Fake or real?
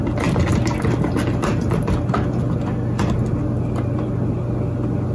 real